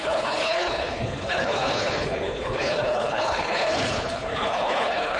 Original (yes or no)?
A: no